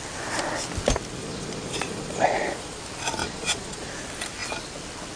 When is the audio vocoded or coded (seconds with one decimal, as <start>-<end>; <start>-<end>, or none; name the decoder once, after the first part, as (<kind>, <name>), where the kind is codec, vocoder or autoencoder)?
1.2-2.8 (vocoder, Vocos); 3.2-3.9